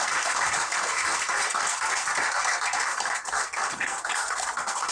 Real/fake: fake